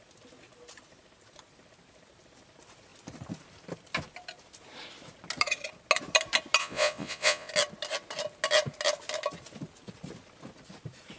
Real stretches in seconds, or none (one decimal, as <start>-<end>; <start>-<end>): 0.0-6.6; 7.5-11.2